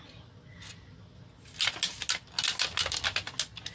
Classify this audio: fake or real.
real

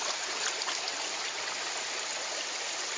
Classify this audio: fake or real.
real